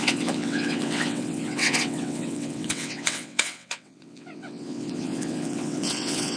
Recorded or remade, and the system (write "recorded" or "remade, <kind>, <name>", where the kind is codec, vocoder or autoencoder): remade, vocoder, WaveNeXt